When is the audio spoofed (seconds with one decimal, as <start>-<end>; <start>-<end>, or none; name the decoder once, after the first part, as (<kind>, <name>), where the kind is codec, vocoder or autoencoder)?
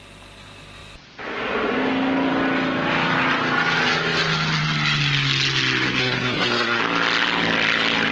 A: 6.0-6.8 (codec, SNAC)